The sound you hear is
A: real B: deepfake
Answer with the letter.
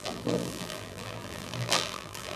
B